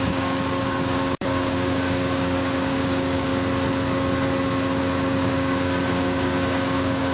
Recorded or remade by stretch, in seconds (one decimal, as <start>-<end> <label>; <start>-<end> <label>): 0.0-3.3 remade; 3.3-4.8 recorded; 4.8-7.1 remade